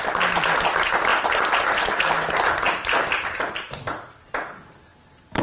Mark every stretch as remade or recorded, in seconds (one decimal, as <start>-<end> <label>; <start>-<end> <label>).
0.0-1.1 recorded; 1.1-4.3 remade; 4.3-4.9 recorded; 4.9-5.4 remade